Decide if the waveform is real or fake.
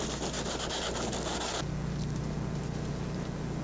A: real